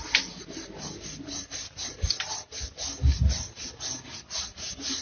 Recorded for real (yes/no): yes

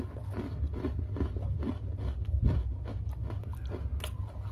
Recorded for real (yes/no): yes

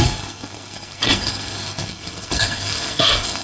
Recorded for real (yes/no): no